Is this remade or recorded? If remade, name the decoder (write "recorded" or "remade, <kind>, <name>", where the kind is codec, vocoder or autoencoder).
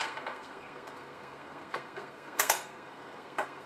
remade, codec, SNAC